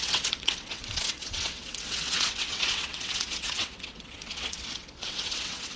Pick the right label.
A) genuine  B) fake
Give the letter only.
B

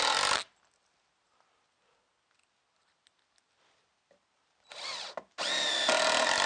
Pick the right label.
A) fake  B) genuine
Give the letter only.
B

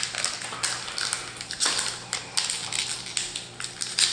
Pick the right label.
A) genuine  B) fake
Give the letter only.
A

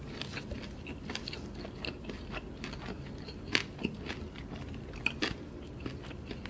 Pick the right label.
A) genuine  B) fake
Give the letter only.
A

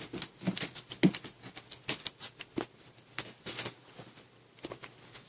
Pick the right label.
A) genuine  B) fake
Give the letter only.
A